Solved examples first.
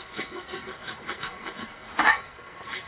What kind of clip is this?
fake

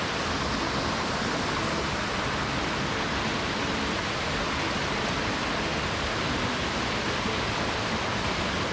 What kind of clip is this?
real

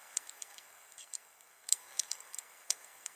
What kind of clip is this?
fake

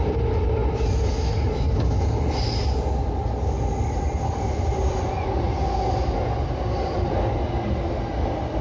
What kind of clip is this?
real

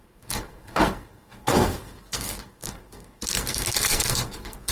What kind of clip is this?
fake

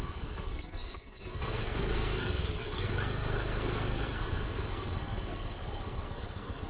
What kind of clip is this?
fake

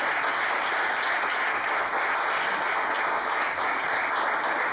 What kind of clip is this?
real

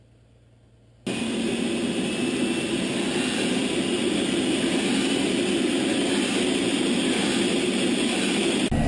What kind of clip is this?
real